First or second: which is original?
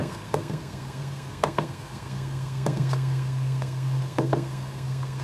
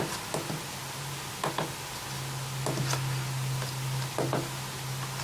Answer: second